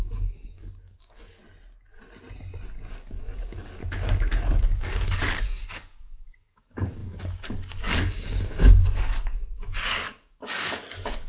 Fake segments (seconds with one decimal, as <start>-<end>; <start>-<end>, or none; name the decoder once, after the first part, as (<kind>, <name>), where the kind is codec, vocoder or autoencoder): 0.0-1.4 (codec, DAC); 2.9-3.8; 4.3-11.3